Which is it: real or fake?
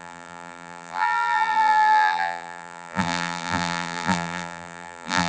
fake